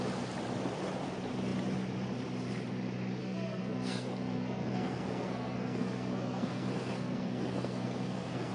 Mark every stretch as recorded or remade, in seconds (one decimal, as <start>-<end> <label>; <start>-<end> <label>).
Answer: 0.0-3.2 recorded; 3.2-8.5 remade